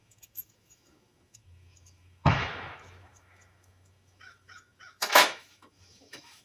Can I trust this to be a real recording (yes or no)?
no